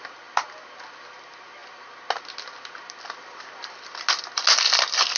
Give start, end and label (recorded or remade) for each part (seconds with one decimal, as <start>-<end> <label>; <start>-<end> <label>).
0.0-5.2 recorded